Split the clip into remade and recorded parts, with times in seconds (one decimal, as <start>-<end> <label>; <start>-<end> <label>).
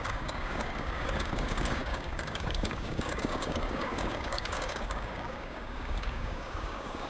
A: 0.0-7.1 remade